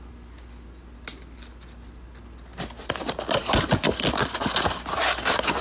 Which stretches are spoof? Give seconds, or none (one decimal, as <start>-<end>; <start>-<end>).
none